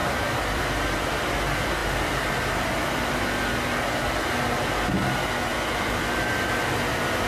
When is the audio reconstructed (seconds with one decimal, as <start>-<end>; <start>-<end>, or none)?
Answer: 0.0-0.6; 5.5-6.3